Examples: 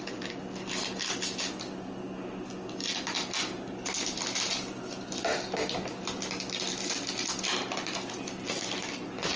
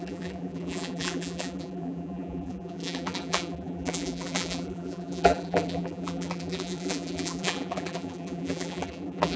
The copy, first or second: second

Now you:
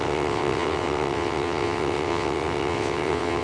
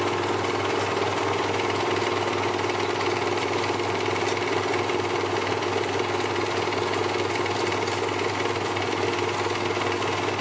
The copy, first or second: first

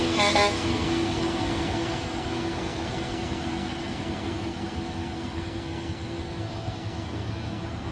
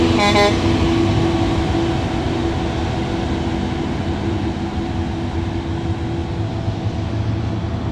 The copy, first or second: first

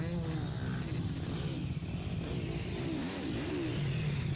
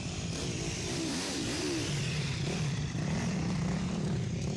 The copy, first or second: second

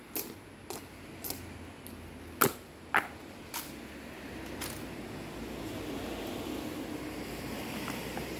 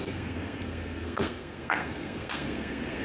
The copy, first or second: second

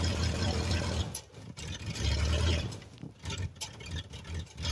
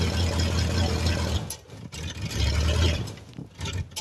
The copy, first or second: first